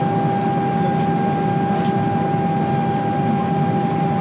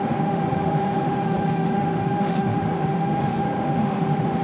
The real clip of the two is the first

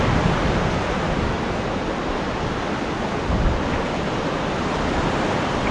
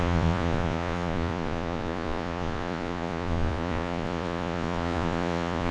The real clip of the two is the first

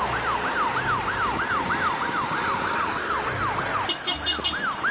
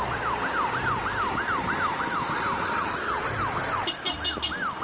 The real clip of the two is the first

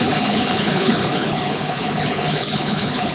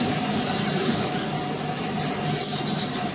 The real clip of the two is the second